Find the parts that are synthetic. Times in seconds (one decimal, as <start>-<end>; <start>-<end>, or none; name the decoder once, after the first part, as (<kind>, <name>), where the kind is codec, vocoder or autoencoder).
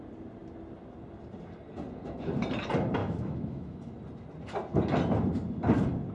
3.0-3.9 (autoencoder, DAC-VAE)